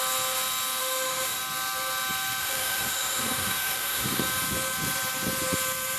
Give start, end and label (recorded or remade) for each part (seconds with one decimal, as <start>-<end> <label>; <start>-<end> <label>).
0.0-0.8 recorded; 0.8-1.4 remade; 1.4-2.4 recorded; 2.4-4.2 remade; 4.2-6.0 recorded

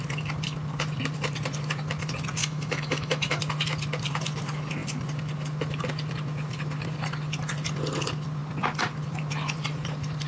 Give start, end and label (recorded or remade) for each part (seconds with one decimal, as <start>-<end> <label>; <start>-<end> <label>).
0.0-2.4 recorded; 2.4-3.4 remade; 3.4-10.3 recorded

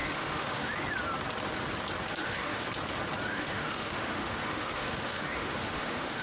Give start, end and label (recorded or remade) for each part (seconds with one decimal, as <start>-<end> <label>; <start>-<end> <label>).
0.0-0.7 remade; 0.7-2.1 recorded; 2.1-2.7 remade; 2.7-3.3 recorded; 3.3-6.2 remade

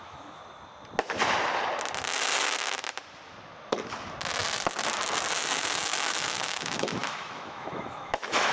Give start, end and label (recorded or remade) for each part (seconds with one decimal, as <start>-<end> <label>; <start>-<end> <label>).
0.0-0.4 remade; 0.4-5.3 recorded; 5.3-8.5 remade

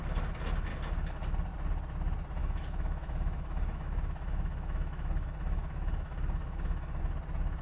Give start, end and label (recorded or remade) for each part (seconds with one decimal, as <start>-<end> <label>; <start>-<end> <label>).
0.0-2.4 recorded; 2.4-7.0 remade; 7.0-7.6 recorded

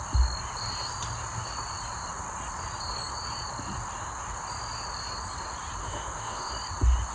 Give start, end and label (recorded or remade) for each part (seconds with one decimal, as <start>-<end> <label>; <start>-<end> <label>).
0.0-5.8 recorded; 5.8-6.5 remade; 6.5-7.1 recorded

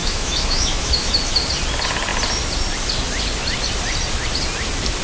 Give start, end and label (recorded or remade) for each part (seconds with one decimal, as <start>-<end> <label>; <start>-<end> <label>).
0.0-1.1 remade; 1.1-5.0 recorded